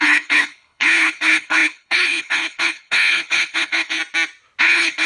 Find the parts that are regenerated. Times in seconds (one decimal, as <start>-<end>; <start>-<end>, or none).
0.0-4.0; 4.6-5.1